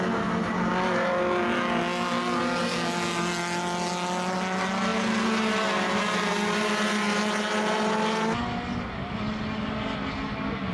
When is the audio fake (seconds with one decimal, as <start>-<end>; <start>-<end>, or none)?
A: none